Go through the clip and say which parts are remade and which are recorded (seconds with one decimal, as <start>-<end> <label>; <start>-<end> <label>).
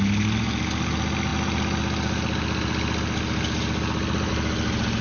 0.0-5.0 recorded